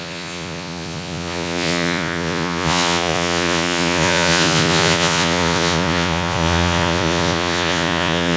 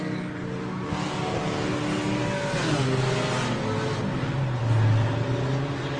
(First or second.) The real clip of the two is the second